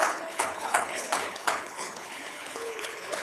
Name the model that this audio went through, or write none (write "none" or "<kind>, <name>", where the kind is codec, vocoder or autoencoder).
codec, HILCodec